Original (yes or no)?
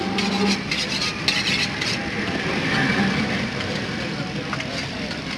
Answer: yes